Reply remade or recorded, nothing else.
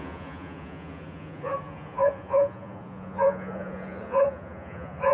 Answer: remade